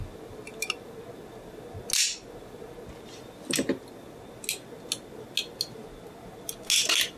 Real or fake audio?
real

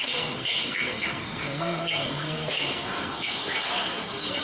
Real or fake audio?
fake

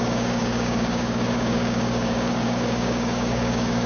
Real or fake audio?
fake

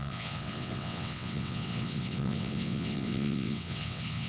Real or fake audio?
fake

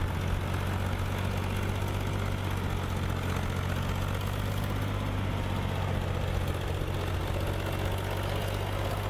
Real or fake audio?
real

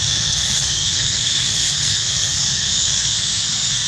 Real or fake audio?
fake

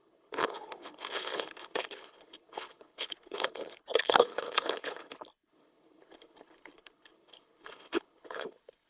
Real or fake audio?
fake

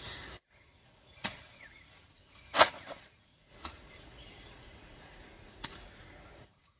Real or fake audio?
fake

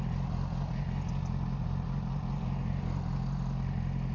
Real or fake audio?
real